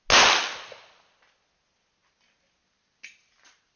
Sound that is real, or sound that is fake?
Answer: real